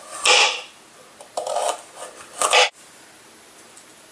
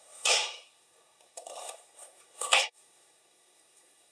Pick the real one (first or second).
first